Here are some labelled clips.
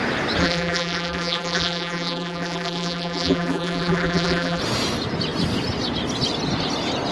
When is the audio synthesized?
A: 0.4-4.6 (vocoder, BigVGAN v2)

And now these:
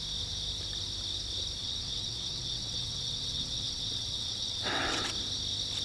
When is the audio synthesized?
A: 1.6-5.1 (vocoder, WaveNeXt)

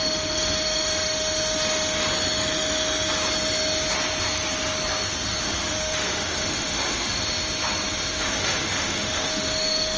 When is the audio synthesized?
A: 0.0-2.0 (autoencoder, DAC-VAE); 5.4-7.2; 8.2-10.0

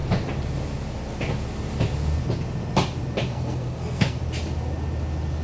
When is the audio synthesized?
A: 3.3-4.2 (codec, SNAC)

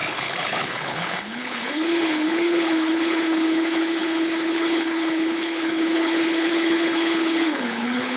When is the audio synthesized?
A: 0.0-8.2 (codec, HILCodec)

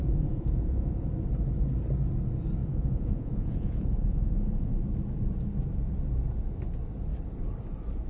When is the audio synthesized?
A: 0.0-1.1 (vocoder, Vocos); 2.6-4.7